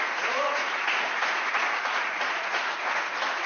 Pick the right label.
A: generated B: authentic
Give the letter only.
A